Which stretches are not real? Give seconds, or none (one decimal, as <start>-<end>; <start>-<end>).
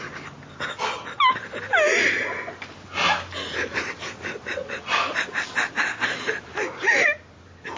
4.6-7.8